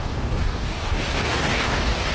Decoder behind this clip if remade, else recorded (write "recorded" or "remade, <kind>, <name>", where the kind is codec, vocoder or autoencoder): remade, codec, DAC